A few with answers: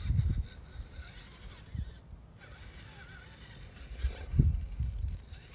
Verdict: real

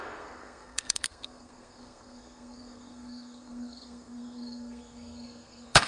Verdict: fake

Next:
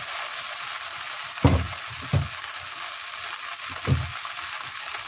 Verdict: real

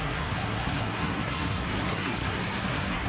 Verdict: fake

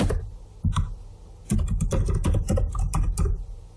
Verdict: real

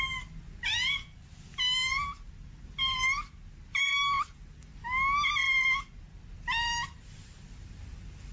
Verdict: real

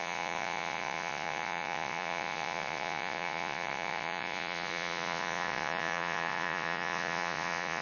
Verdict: fake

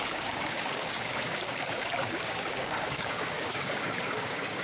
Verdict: fake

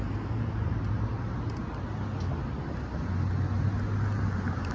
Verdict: real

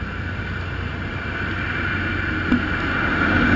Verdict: real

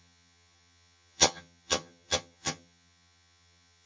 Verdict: fake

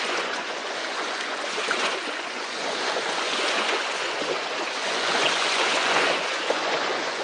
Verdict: fake